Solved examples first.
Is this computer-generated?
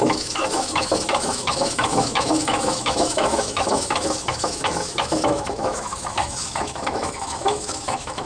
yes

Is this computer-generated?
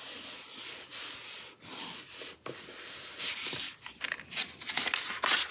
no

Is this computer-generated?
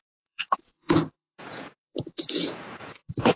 yes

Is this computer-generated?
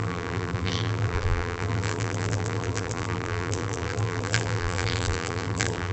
yes